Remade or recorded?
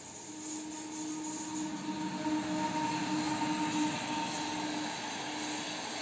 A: recorded